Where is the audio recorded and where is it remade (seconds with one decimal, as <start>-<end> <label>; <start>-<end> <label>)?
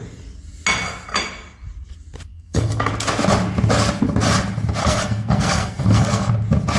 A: 0.0-2.3 recorded; 2.3-2.9 remade; 2.9-4.8 recorded; 4.8-6.3 remade; 6.3-6.8 recorded